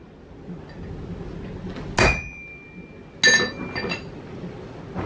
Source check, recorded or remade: recorded